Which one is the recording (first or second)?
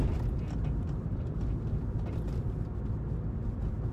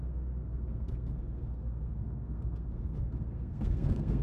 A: first